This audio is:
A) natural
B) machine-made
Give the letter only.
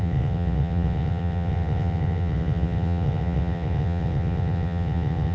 B